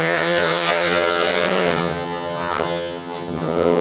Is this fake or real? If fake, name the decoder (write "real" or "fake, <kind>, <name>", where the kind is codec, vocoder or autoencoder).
fake, vocoder, HiFi-GAN